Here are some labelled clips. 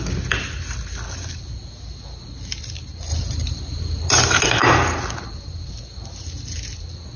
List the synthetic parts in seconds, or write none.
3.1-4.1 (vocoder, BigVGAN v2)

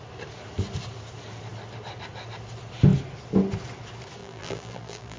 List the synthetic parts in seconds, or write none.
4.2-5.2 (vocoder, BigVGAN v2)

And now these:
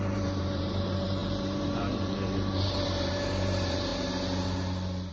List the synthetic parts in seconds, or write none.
0.0-3.9 (vocoder, BigVGAN v2)

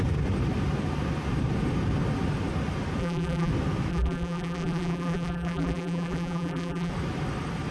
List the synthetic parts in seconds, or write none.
3.0-3.5 (vocoder, BigVGAN v2); 3.9-6.9

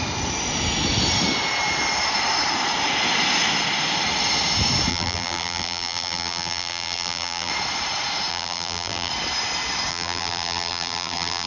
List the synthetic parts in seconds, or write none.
4.9-7.5 (vocoder, BigVGAN v2); 8.3-9.1; 9.9-11.5

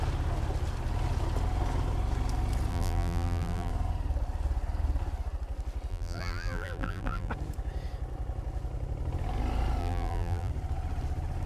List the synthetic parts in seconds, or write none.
2.7-3.7 (vocoder, BigVGAN v2); 5.9-7.3; 9.8-10.5

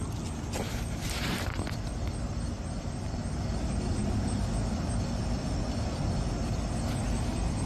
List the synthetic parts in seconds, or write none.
none

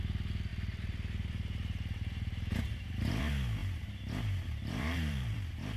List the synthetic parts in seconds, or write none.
0.5-3.2 (vocoder, BigVGAN v2); 3.6-5.8